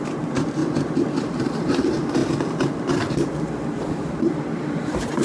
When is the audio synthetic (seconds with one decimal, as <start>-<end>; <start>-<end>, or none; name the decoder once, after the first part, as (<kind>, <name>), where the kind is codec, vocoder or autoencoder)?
0.0-0.6 (vocoder, BigVGAN v2); 1.2-2.2; 4.6-5.2

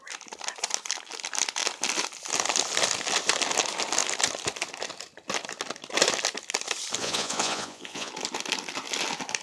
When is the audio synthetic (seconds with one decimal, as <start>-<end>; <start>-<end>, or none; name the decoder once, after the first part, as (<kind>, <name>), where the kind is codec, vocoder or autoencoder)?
7.0-8.1 (vocoder, Vocos)

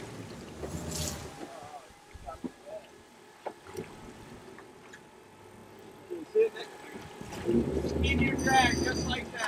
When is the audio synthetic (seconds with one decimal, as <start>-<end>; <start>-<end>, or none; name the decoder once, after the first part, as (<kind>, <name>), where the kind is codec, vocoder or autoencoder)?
none